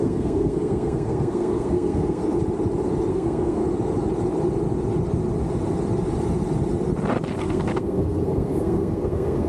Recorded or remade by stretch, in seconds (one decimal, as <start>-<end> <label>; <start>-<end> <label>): 0.0-2.2 remade; 2.2-3.1 recorded; 3.1-3.6 remade; 3.6-7.4 recorded; 7.4-9.5 remade